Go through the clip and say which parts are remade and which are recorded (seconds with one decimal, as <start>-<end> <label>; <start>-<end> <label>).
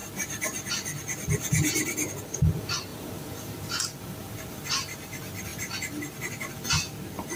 0.0-0.7 remade; 0.7-2.9 recorded; 2.9-3.8 remade; 3.8-4.2 recorded; 4.2-5.1 remade; 5.1-7.4 recorded